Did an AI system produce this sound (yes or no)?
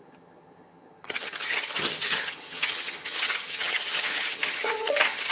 yes